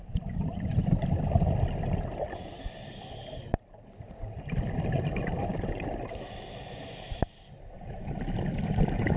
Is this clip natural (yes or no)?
yes